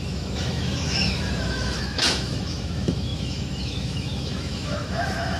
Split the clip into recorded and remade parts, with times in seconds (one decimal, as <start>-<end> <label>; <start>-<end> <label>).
0.0-5.4 remade